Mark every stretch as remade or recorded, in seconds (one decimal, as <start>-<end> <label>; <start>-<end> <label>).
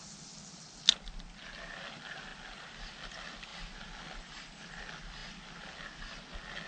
0.0-6.7 recorded